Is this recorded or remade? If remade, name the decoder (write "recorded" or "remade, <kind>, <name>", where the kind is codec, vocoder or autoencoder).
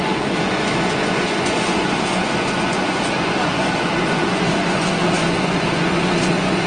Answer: remade, vocoder, Vocos